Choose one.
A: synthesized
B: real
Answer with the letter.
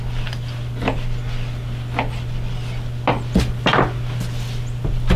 B